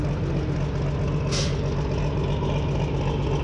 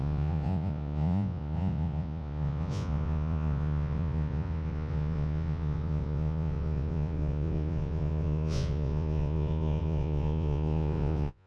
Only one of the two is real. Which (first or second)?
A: first